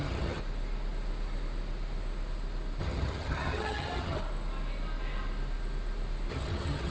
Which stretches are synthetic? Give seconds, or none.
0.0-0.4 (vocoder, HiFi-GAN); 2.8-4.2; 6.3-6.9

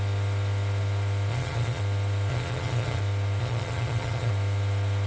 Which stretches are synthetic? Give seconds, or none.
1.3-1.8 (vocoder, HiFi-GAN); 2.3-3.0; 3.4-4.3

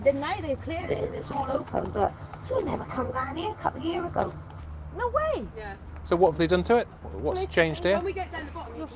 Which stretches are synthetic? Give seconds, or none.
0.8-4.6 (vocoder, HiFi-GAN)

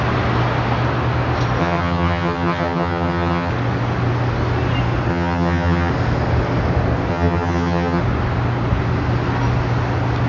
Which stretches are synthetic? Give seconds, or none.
1.6-3.5 (vocoder, HiFi-GAN); 5.1-5.9; 7.1-8.0

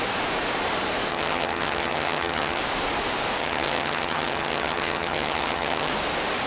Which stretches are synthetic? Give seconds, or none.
1.1-2.6 (vocoder, HiFi-GAN); 3.4-5.9

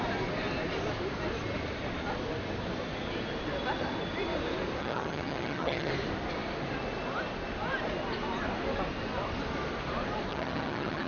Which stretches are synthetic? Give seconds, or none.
4.8-5.9 (vocoder, HiFi-GAN); 10.3-11.1